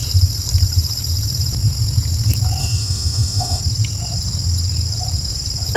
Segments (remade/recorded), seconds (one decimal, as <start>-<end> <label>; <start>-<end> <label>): 0.0-2.6 recorded; 2.6-3.6 remade; 3.6-5.8 recorded